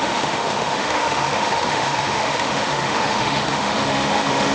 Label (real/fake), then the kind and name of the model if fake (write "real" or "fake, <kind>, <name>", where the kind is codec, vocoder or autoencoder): fake, autoencoder, DAC-VAE